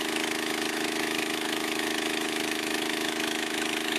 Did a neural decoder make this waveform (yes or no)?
yes